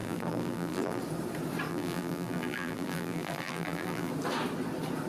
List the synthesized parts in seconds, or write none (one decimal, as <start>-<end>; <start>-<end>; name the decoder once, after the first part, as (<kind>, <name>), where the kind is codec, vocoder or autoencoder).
0.0-1.0 (vocoder, BigVGAN v2); 1.7-4.1